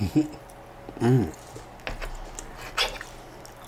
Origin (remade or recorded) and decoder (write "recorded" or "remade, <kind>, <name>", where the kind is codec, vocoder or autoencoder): recorded